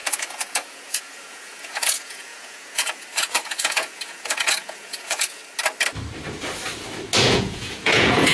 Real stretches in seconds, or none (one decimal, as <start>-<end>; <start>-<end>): 5.4-7.2